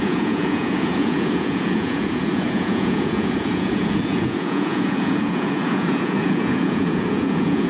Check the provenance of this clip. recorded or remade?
remade